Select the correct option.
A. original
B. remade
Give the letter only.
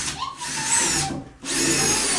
A